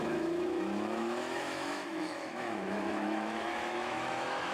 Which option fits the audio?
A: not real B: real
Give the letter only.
A